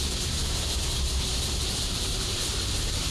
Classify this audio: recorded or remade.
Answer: remade